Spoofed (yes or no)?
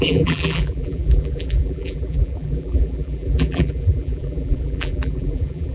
yes